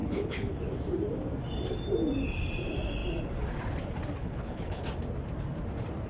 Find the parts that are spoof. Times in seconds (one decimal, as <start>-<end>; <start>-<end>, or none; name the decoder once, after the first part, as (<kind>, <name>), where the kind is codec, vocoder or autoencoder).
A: 0.0-0.6 (codec, HILCodec); 4.2-4.8

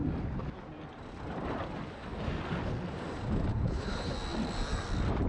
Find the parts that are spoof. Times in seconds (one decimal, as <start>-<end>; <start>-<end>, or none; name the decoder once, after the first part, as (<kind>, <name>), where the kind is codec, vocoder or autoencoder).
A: 3.5-4.1 (codec, HILCodec)

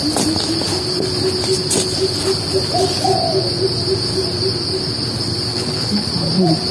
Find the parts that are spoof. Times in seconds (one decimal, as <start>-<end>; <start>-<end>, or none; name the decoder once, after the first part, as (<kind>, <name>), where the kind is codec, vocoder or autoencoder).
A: 5.5-6.1 (codec, HILCodec)